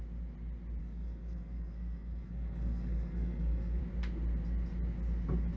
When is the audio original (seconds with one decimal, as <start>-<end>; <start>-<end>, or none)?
0.0-0.8; 3.8-5.6